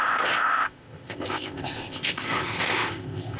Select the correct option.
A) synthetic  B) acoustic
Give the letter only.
A